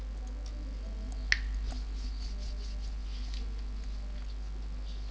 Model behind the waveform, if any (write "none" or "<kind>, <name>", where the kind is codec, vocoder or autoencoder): none